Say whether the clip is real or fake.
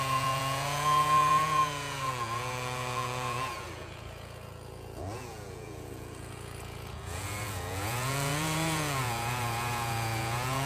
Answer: fake